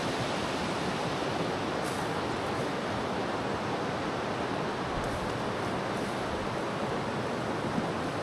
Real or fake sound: real